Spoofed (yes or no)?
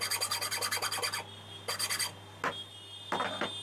no